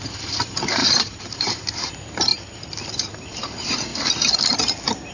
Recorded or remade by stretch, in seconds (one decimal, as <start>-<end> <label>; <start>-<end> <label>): 0.0-2.3 remade; 2.3-3.5 recorded; 3.5-3.9 remade; 3.9-5.1 recorded